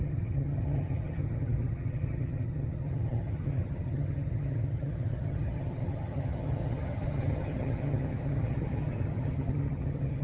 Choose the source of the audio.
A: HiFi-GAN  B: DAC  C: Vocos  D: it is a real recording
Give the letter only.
A